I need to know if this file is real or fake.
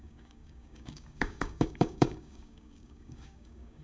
fake